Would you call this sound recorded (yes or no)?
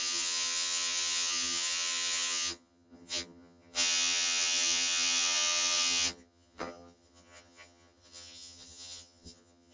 no